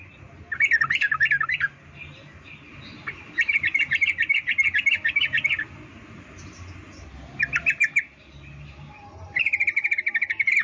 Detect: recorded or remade recorded